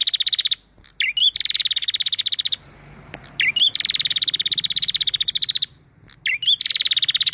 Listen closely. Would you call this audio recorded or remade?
recorded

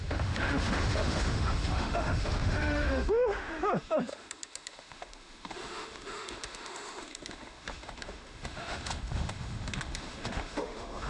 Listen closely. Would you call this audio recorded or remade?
remade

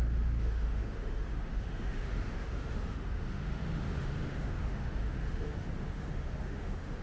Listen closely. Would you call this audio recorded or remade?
remade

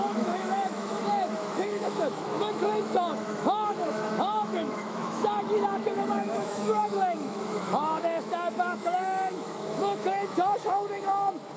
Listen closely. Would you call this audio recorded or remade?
remade